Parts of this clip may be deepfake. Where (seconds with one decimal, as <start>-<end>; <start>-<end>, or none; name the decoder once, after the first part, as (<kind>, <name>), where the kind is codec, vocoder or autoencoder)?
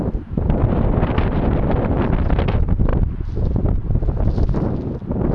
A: none